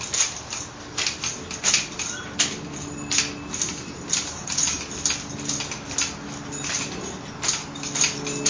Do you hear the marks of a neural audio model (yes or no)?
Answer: no